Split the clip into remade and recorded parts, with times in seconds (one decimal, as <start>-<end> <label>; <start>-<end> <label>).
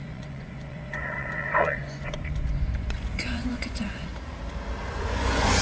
0.0-4.1 remade; 4.1-4.9 recorded; 4.9-5.6 remade